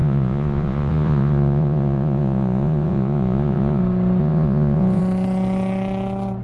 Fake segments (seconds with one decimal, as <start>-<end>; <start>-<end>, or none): 0.0-3.8; 4.2-5.0